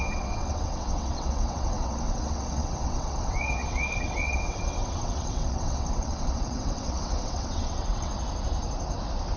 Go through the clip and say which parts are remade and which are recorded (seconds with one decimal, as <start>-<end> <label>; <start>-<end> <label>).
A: 0.0-8.1 remade; 8.1-9.4 recorded